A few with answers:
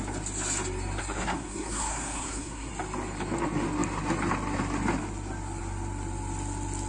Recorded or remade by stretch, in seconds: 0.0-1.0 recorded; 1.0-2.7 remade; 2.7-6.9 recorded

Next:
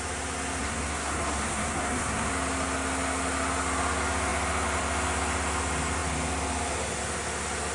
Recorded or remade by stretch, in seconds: 0.0-0.6 recorded; 0.6-2.3 remade; 2.3-7.7 recorded